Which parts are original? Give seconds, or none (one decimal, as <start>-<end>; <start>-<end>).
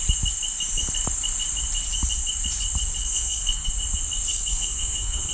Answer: 0.0-3.0; 3.7-4.3